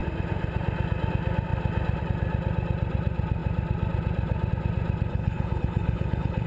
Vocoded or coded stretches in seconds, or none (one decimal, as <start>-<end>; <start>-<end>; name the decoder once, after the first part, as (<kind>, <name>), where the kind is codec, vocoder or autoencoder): 5.1-6.5 (codec, HILCodec)